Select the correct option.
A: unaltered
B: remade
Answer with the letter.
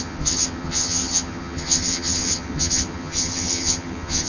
B